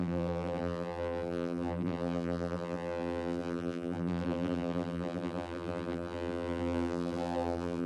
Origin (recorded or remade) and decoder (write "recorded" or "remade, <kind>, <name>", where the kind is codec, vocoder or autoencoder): remade, vocoder, BigVGAN v2